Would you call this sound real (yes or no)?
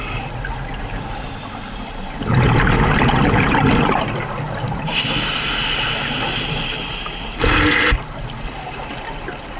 yes